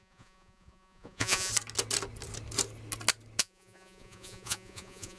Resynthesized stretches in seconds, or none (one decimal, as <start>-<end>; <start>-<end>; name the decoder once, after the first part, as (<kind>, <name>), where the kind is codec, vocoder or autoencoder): 0.0-1.5 (vocoder, Vocos); 3.4-5.2